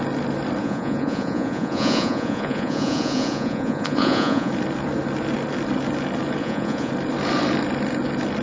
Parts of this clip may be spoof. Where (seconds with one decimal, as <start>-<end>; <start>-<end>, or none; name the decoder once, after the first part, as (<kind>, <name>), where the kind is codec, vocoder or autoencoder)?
0.6-4.5 (vocoder, Vocos); 6.4-6.9